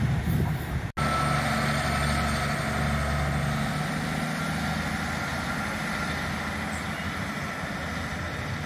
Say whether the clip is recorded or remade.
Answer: recorded